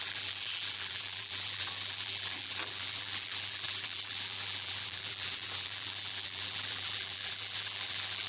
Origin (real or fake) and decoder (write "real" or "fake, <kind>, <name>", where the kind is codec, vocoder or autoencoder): fake, vocoder, BigVGAN v2